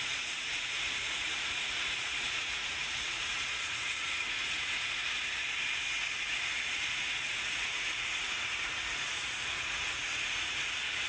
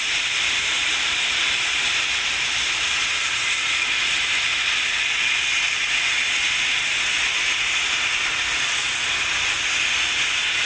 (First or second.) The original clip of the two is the second